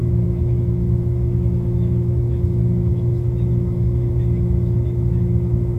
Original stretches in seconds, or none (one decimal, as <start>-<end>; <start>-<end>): none